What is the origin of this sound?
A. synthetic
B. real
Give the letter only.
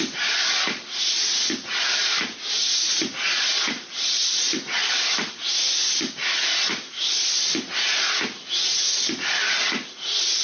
B